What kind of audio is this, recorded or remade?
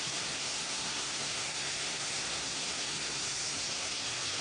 remade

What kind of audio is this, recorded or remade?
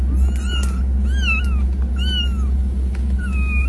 recorded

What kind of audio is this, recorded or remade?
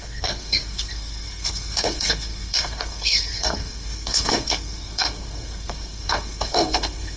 remade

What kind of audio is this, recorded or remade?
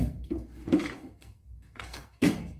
remade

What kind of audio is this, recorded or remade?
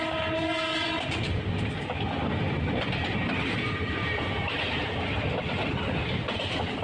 recorded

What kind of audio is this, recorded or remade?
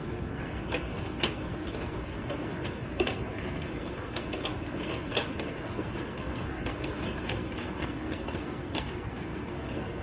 remade